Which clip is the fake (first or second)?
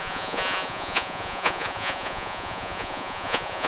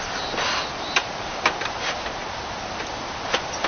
first